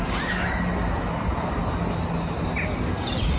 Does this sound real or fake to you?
real